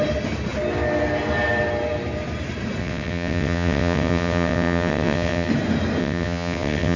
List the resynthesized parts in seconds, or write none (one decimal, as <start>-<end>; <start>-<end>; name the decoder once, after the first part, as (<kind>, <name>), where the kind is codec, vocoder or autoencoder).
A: 2.8-5.5 (vocoder, WaveNeXt); 6.0-7.0